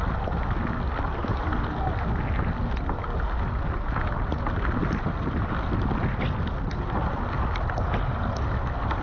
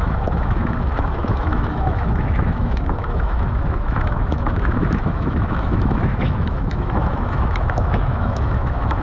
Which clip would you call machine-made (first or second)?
second